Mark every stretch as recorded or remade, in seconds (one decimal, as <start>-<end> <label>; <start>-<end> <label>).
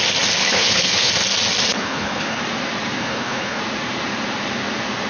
0.0-0.4 recorded; 0.4-1.1 remade; 1.1-1.7 recorded; 1.7-2.4 remade; 2.4-3.0 recorded; 3.0-3.6 remade; 3.6-5.1 recorded